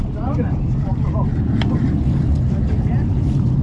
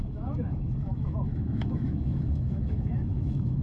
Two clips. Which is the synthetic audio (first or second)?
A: second